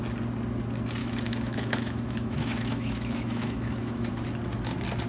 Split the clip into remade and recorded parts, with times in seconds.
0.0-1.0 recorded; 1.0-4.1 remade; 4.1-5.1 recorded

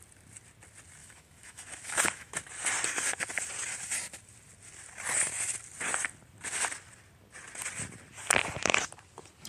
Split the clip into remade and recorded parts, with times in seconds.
0.0-1.0 recorded; 1.0-2.4 remade; 2.4-9.5 recorded

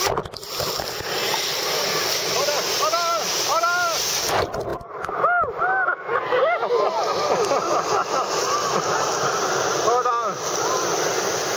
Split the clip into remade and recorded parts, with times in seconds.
0.0-1.2 recorded; 1.2-2.0 remade; 2.0-3.1 recorded; 3.1-3.6 remade; 3.6-11.6 recorded

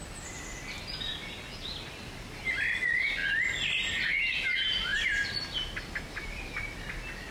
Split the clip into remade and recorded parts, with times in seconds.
0.0-4.9 recorded; 4.9-6.6 remade; 6.6-7.3 recorded

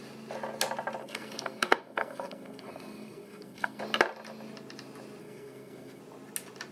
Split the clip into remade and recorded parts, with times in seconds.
0.0-1.0 recorded; 1.0-3.8 remade; 3.8-5.2 recorded; 5.2-6.0 remade; 6.0-6.7 recorded

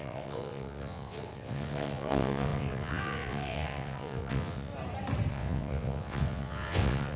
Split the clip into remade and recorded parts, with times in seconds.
0.0-4.7 remade; 4.7-5.3 recorded; 5.3-7.2 remade

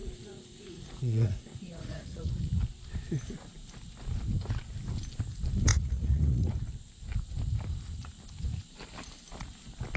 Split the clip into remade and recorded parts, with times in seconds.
0.0-2.3 remade; 2.3-5.7 recorded; 5.7-6.5 remade; 6.5-10.0 recorded